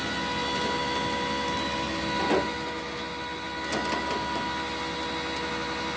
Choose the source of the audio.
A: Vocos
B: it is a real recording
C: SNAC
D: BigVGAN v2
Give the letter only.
B